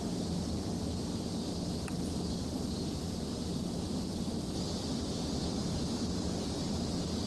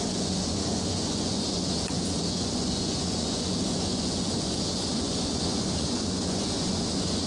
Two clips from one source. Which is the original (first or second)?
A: first